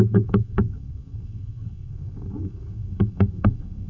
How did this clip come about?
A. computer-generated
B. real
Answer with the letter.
A